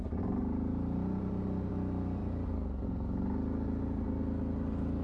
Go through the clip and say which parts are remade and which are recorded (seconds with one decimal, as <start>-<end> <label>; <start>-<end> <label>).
0.0-0.4 recorded; 0.4-1.7 remade; 1.7-5.0 recorded